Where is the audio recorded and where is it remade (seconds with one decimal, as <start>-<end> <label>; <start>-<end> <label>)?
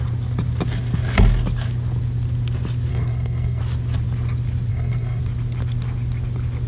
0.0-2.9 recorded; 2.9-3.6 remade; 3.6-4.7 recorded; 4.7-5.2 remade; 5.2-6.7 recorded